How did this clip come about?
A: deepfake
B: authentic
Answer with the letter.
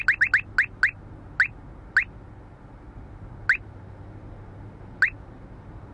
B